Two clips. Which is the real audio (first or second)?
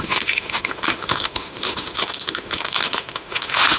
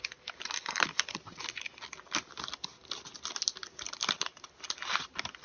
second